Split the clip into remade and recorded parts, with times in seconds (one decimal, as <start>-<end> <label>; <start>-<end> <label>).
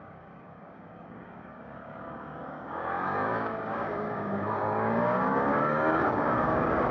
0.0-6.9 remade